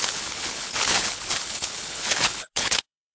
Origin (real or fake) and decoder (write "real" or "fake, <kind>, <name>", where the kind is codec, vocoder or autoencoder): fake, codec, HILCodec